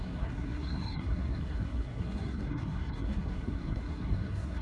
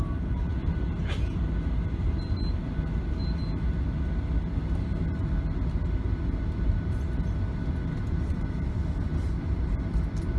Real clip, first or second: second